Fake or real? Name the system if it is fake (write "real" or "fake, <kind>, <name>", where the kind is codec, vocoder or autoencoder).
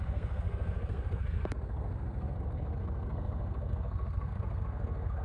fake, codec, SNAC